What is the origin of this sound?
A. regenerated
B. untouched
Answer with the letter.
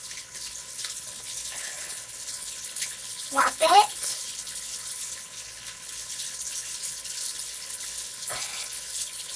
A